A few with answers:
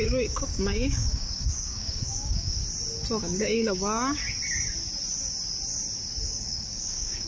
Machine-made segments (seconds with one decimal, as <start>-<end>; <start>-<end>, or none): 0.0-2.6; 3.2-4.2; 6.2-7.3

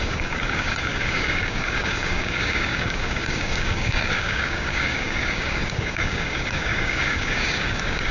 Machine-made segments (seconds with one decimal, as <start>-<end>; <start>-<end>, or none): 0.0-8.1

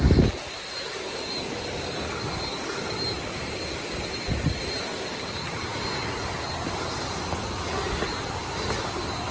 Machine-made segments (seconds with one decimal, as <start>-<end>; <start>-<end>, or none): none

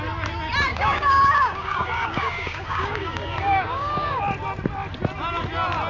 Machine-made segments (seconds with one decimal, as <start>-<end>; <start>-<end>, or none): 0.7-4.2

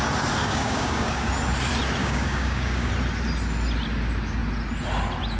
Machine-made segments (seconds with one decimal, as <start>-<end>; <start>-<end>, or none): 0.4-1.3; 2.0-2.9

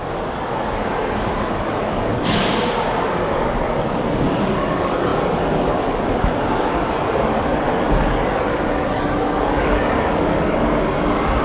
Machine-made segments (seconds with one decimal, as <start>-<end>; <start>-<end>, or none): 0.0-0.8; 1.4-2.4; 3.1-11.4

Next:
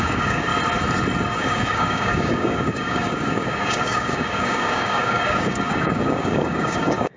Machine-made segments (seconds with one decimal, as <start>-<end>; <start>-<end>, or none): 0.0-0.5; 1.4-7.2